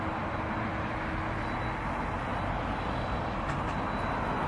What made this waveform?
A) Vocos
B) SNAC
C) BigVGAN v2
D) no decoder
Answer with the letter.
D